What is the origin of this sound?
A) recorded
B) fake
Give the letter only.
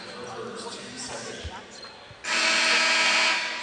A